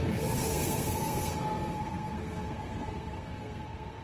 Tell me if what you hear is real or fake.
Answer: fake